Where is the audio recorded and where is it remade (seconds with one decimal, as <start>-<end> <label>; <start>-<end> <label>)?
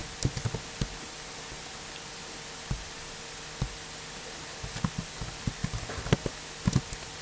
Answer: 0.0-7.2 recorded